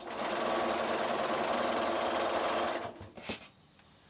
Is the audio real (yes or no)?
yes